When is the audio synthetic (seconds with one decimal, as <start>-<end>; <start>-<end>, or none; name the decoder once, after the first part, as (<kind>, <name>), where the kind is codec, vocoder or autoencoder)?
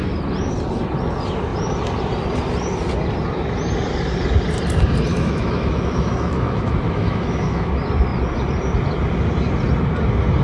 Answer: 5.1-7.7 (autoencoder, DAC-VAE)